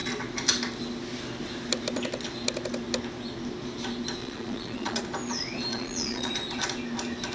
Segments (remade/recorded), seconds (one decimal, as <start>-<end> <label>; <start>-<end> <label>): 0.0-4.2 recorded; 4.2-5.0 remade; 5.0-5.7 recorded; 5.7-6.3 remade; 6.3-7.3 recorded

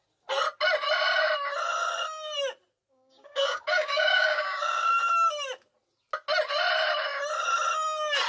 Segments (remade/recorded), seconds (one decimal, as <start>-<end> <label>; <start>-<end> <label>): 0.0-2.9 recorded; 2.9-4.9 remade; 4.9-8.3 recorded

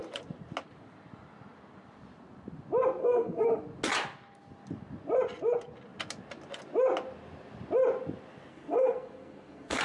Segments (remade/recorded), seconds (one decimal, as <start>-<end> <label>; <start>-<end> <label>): 0.0-3.0 recorded; 3.0-3.6 remade; 3.6-8.5 recorded; 8.5-9.8 remade

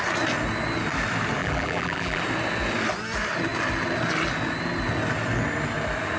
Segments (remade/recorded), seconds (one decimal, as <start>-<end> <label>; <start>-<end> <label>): 0.0-1.4 recorded; 1.4-2.2 remade; 2.2-6.2 recorded

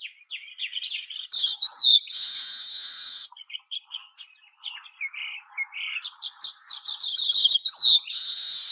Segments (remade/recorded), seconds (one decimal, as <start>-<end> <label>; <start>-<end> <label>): 0.0-8.7 recorded

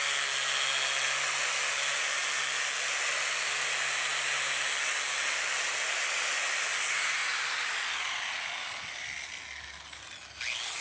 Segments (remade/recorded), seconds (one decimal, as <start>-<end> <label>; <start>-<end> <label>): 0.0-10.8 recorded

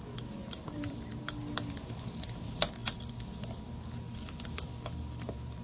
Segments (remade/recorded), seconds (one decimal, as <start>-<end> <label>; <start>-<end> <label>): 0.0-0.4 recorded; 0.4-1.2 remade; 1.2-5.6 recorded